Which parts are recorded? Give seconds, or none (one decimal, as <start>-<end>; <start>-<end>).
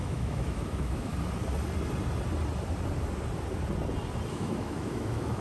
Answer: 1.1-4.3